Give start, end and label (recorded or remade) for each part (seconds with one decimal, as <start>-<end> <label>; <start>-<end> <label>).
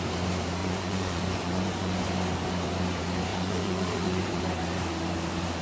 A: 0.0-0.6 recorded; 0.6-2.1 remade; 2.1-3.3 recorded; 3.3-4.4 remade; 4.4-5.6 recorded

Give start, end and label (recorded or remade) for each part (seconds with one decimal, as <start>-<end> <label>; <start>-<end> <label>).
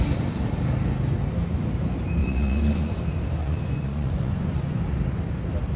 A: 0.0-2.2 recorded; 2.2-3.0 remade; 3.0-3.4 recorded; 3.4-4.8 remade; 4.8-5.8 recorded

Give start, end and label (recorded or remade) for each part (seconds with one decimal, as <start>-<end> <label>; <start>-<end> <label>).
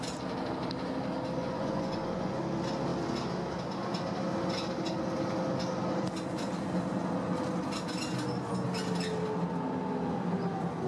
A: 0.0-1.4 recorded; 1.4-2.4 remade; 2.4-10.9 recorded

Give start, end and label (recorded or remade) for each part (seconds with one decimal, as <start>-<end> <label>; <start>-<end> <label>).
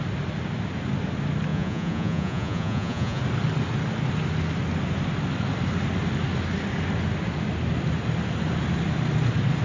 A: 0.0-1.5 recorded; 1.5-3.2 remade; 3.2-9.6 recorded